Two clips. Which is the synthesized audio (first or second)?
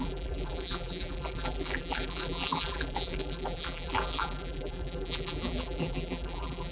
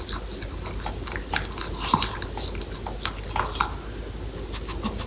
first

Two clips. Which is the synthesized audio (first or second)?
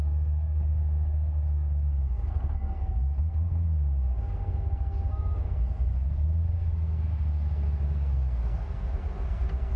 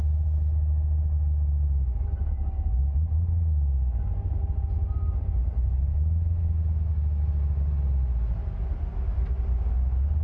first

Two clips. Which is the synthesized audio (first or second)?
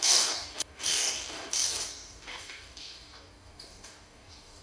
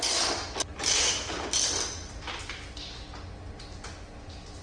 first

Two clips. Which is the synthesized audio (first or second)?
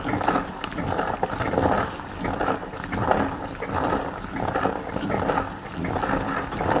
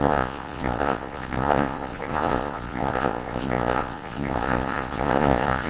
second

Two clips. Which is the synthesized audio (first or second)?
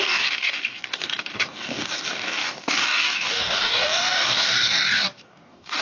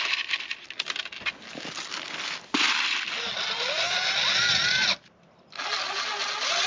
first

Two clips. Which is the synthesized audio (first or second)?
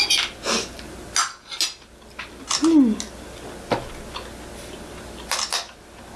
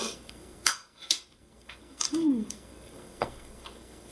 second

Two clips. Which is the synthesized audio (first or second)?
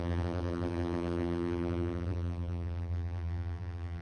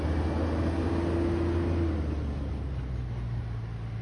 first